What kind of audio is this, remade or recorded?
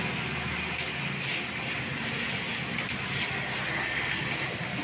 recorded